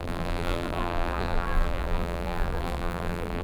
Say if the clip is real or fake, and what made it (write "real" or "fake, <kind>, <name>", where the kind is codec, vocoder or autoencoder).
fake, vocoder, BigVGAN v2